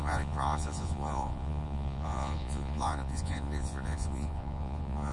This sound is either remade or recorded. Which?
remade